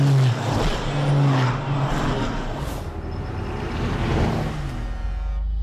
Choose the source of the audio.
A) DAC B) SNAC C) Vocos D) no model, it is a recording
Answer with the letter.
D